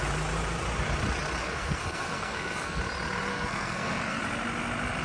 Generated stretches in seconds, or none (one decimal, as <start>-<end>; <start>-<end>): 1.4-2.8; 3.3-4.2